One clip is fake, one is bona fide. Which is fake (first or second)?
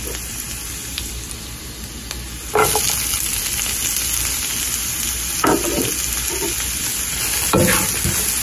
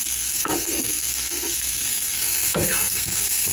second